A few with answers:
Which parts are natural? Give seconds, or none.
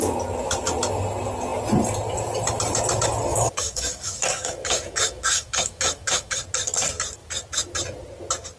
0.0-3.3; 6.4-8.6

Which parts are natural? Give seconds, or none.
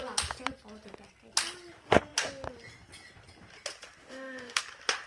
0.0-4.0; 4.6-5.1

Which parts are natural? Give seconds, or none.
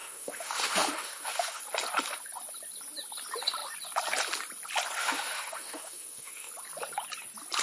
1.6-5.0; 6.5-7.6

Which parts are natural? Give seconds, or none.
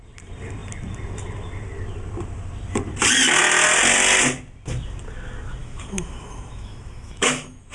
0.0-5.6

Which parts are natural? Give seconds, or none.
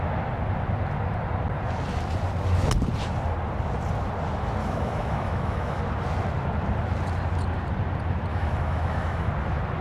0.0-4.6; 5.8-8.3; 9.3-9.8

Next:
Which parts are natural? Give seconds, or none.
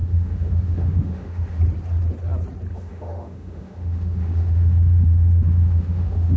1.6-2.7